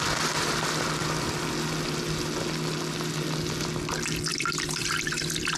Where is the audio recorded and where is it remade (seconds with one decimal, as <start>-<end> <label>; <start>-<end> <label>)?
0.0-4.3 recorded; 4.3-5.6 remade